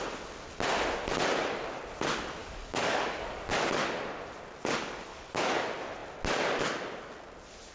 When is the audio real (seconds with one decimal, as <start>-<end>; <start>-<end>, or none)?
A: 0.0-2.4; 3.5-5.1; 5.6-7.7